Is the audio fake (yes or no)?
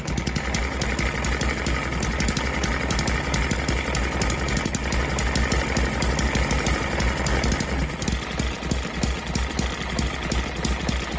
no